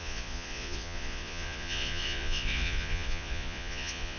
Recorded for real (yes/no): no